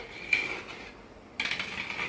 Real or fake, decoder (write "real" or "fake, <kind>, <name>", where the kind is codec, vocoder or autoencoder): real